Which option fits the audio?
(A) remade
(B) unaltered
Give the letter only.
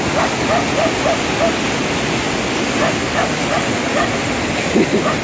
B